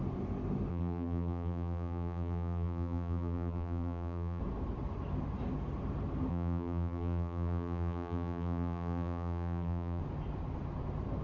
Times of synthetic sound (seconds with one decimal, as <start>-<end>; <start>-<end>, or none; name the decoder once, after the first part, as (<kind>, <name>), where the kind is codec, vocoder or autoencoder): 0.7-4.4 (vocoder, BigVGAN v2); 6.3-10.0